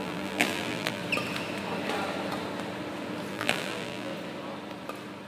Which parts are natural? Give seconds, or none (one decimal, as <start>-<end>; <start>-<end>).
1.0-3.3; 4.1-5.3